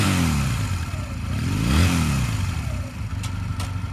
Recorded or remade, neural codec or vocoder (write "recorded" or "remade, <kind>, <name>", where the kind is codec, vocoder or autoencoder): recorded